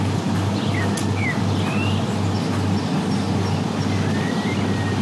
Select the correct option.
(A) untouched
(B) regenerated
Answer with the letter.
A